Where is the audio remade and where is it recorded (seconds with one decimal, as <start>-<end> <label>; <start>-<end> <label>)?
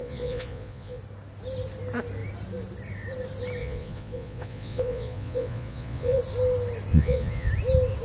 0.0-1.0 remade; 1.0-3.6 recorded; 3.6-6.2 remade; 6.2-6.9 recorded; 6.9-7.5 remade; 7.5-8.0 recorded